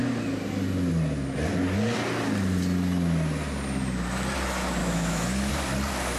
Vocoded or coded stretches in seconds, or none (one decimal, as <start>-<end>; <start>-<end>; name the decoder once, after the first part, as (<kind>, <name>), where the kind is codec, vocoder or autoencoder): 4.8-5.5 (autoencoder, DAC-VAE)